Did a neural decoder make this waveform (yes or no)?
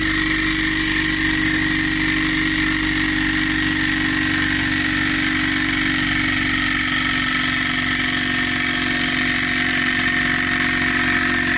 no